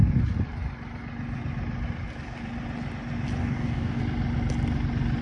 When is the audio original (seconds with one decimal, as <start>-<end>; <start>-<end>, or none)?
0.0-3.4; 4.0-5.2